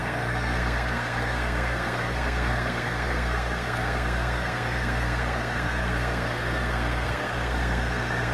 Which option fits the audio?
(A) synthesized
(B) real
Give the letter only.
A